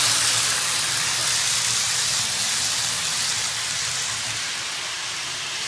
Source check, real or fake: real